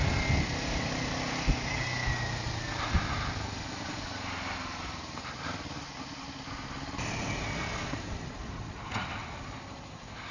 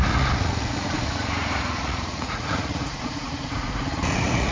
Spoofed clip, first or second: second